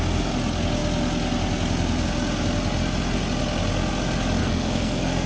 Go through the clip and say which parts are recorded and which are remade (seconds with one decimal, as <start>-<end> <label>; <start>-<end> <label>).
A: 0.0-4.4 recorded; 4.4-5.3 remade